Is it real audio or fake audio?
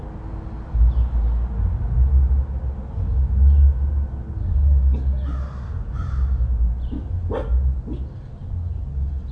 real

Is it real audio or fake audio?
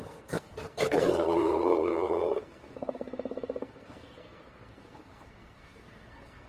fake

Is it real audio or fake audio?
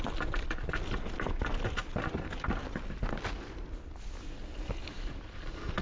real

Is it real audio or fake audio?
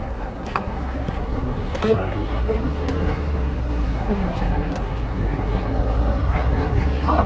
fake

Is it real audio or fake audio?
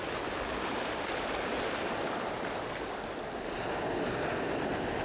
real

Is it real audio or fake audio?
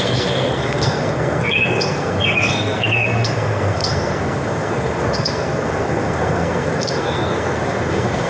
fake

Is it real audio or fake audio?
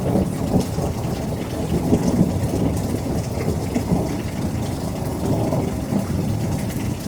real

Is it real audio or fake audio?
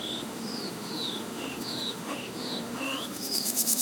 fake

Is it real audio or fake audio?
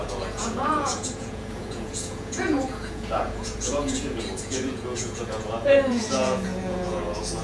fake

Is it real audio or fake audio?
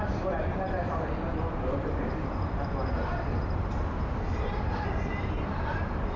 fake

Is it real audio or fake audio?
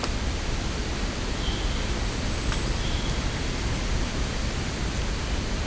real